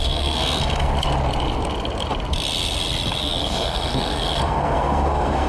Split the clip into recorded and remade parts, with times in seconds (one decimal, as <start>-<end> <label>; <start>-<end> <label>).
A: 0.0-0.9 remade; 0.9-3.2 recorded; 3.2-5.5 remade